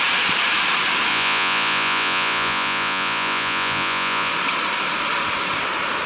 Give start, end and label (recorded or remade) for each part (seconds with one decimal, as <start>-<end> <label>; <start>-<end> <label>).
0.0-1.1 recorded; 1.1-4.3 remade; 4.3-6.1 recorded